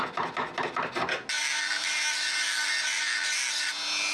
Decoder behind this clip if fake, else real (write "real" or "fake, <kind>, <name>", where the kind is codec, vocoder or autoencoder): real